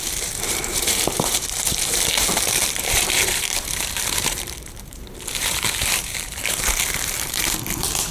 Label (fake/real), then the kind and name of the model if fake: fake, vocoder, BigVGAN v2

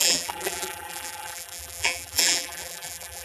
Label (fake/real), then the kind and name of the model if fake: fake, vocoder, BigVGAN v2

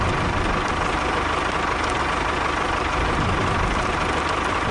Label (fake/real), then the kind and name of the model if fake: real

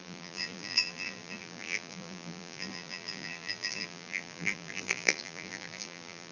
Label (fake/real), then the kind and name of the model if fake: fake, vocoder, BigVGAN v2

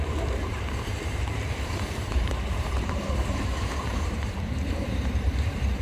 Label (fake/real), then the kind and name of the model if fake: fake, vocoder, BigVGAN v2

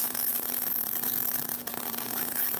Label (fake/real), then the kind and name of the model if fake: fake, vocoder, BigVGAN v2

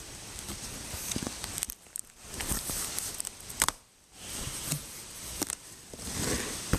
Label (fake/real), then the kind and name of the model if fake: fake, vocoder, BigVGAN v2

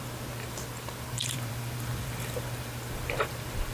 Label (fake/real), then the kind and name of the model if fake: fake, vocoder, BigVGAN v2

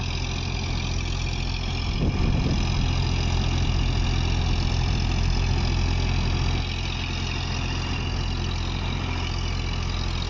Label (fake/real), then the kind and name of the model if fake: real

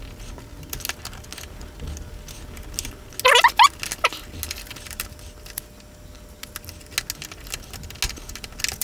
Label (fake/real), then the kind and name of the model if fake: real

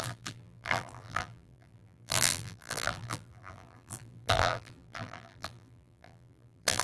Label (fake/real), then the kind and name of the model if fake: fake, vocoder, BigVGAN v2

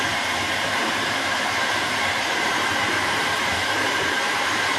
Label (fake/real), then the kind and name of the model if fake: fake, vocoder, BigVGAN v2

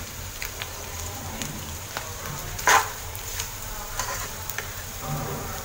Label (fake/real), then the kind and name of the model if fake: fake, vocoder, BigVGAN v2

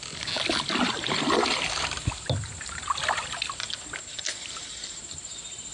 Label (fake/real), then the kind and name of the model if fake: real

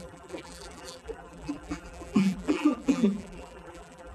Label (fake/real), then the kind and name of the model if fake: fake, vocoder, BigVGAN v2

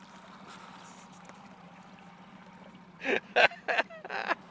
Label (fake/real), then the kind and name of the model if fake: real